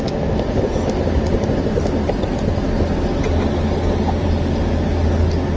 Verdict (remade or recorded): recorded